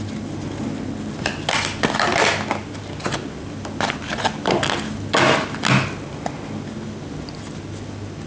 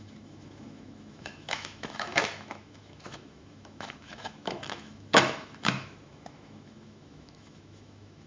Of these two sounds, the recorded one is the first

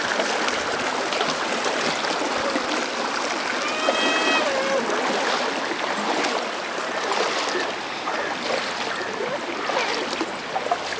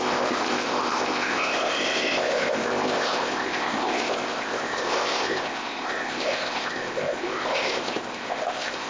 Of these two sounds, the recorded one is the first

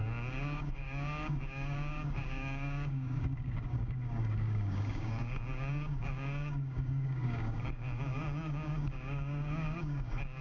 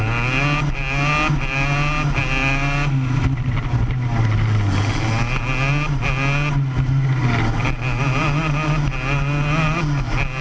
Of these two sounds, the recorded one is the second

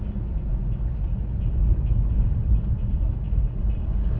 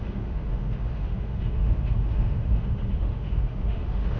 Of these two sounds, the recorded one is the first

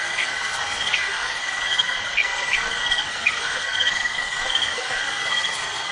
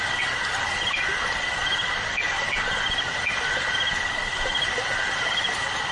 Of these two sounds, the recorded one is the second